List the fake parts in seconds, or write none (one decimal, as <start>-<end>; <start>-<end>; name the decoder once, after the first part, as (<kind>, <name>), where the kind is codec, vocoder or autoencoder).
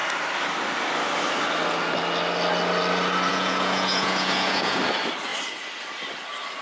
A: 3.3-4.8 (vocoder, Vocos)